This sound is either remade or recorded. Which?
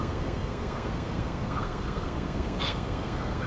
remade